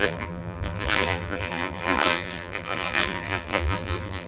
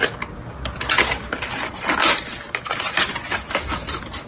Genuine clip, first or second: second